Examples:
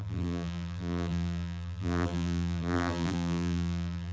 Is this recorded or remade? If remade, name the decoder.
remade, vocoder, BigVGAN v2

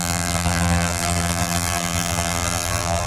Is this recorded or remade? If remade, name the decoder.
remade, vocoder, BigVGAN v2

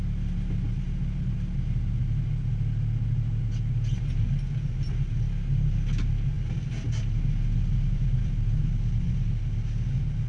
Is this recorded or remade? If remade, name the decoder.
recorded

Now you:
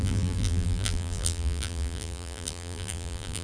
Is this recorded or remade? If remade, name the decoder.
remade, vocoder, BigVGAN v2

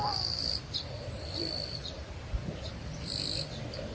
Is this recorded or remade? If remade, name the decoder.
remade, vocoder, BigVGAN v2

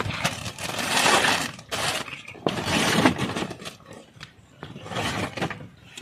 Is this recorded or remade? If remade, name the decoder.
remade, vocoder, BigVGAN v2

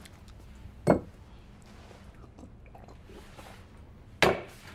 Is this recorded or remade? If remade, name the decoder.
recorded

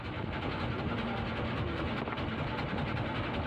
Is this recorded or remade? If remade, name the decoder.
recorded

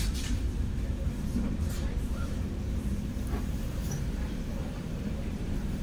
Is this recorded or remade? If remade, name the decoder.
remade, vocoder, BigVGAN v2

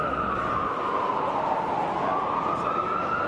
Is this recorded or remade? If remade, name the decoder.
recorded